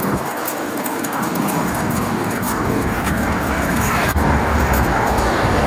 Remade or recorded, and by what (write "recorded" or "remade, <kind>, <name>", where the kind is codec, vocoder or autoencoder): remade, codec, DAC